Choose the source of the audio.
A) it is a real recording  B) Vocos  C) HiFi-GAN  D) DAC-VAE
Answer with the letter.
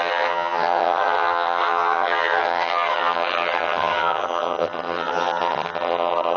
C